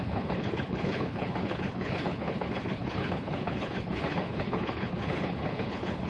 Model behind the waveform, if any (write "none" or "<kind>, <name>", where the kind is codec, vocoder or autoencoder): codec, HILCodec